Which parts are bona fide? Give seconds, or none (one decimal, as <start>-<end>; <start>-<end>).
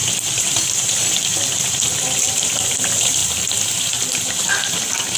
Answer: 1.1-5.2